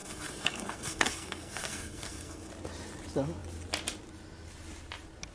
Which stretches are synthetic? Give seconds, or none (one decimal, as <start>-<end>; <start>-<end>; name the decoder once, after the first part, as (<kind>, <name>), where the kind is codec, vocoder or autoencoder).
0.0-2.5 (codec, SNAC)